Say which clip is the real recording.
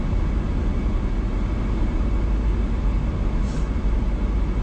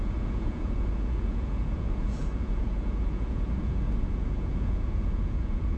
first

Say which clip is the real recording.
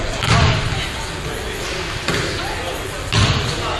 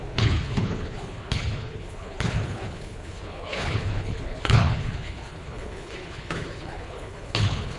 first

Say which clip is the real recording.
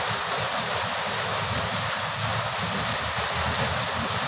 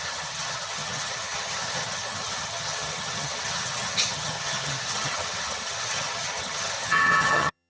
first